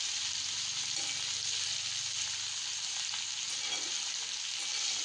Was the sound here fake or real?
real